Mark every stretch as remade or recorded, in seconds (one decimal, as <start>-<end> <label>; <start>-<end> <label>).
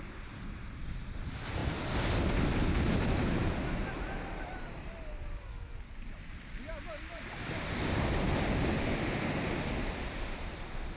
0.0-11.0 recorded